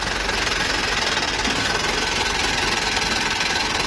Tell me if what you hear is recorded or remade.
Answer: recorded